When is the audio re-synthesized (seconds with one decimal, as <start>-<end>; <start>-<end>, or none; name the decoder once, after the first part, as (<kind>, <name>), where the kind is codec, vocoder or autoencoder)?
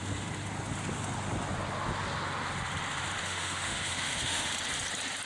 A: 3.2-4.5 (autoencoder, DAC-VAE)